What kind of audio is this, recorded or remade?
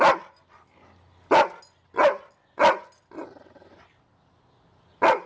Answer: recorded